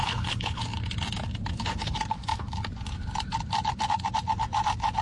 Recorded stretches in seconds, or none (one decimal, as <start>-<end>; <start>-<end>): 0.6-5.0